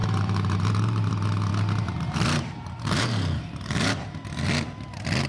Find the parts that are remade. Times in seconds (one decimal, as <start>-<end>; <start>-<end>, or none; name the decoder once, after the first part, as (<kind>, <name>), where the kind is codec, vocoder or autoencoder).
0.0-1.1 (vocoder, BigVGAN v2); 1.5-4.5